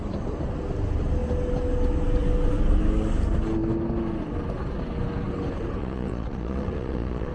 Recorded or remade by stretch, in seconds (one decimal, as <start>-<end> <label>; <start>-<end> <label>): 0.0-5.8 recorded; 5.8-7.3 remade